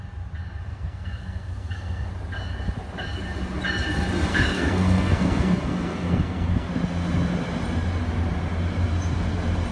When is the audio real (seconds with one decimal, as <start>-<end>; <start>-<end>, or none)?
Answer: 0.0-0.7; 2.1-4.3; 6.7-9.7